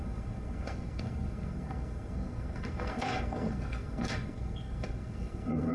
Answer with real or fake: fake